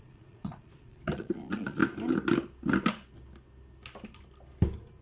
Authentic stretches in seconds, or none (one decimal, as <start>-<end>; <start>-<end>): 1.8-5.0